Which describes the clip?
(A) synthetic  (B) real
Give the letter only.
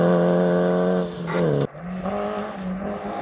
B